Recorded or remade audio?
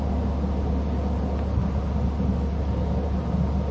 recorded